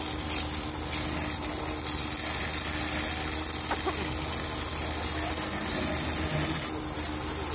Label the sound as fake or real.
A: real